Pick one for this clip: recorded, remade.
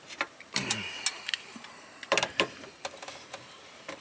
recorded